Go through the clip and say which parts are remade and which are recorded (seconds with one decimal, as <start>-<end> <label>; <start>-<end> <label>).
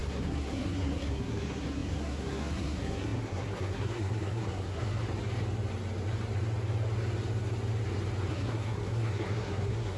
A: 0.0-5.0 remade; 5.0-8.3 recorded; 8.3-10.0 remade